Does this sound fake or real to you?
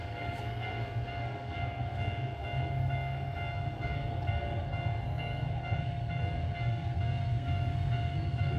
fake